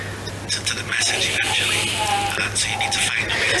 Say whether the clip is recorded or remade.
recorded